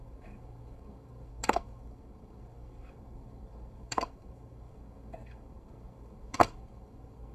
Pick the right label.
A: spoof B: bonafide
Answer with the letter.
A